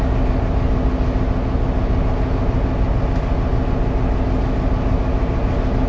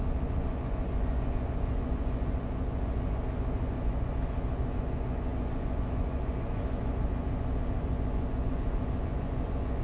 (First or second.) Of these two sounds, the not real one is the second